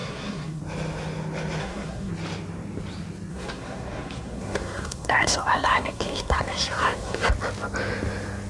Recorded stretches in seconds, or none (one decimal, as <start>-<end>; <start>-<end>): 0.6-1.6; 2.1-3.3; 7.3-8.5